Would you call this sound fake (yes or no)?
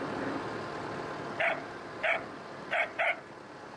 no